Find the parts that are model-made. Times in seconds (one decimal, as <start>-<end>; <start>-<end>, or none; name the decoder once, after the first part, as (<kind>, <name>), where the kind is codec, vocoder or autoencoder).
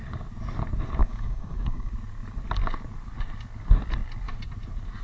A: 1.0-1.9 (codec, DAC)